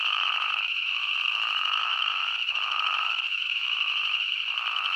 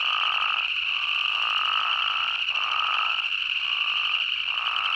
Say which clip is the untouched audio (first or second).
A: second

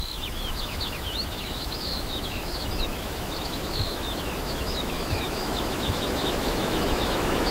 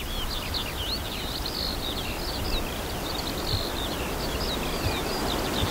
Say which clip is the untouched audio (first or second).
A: second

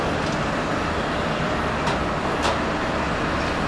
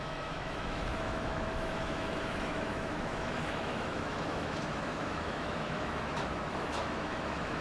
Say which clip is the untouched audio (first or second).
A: first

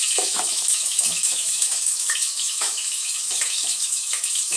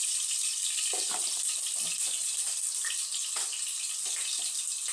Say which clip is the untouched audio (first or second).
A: second